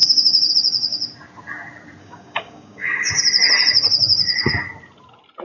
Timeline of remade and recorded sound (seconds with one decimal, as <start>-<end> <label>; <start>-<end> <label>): 0.0-0.5 remade; 0.5-2.0 recorded; 2.0-3.2 remade; 3.2-5.4 recorded